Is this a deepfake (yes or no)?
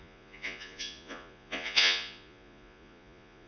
yes